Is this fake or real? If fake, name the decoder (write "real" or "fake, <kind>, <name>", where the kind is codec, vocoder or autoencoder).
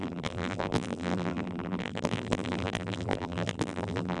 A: fake, vocoder, BigVGAN v2